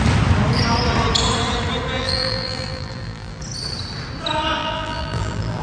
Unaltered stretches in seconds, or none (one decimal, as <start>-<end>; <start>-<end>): 0.0-2.0; 3.4-4.6